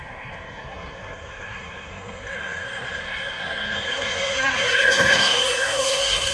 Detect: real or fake fake